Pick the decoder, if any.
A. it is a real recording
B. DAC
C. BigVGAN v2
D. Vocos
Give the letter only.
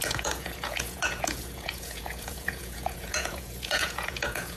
D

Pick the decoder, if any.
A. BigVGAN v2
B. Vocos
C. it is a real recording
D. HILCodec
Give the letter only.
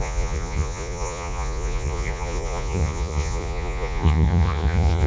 B